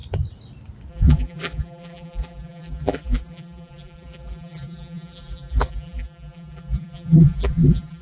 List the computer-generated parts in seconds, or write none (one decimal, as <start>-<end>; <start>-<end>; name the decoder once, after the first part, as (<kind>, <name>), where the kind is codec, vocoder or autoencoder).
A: 0.9-8.0 (vocoder, BigVGAN v2)